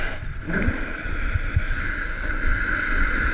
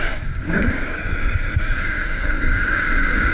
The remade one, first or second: second